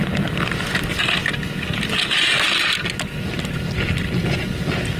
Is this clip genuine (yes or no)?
yes